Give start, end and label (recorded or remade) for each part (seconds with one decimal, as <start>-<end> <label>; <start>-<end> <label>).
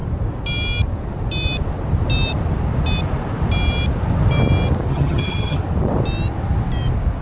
0.0-4.9 recorded; 4.9-5.6 remade; 5.6-7.2 recorded